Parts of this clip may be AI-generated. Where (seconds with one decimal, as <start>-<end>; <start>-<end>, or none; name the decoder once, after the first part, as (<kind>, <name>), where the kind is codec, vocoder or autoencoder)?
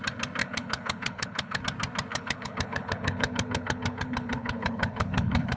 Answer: 0.4-1.6 (codec, HILCodec); 2.1-5.6